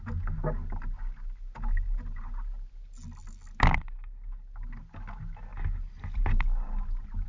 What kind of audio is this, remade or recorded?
recorded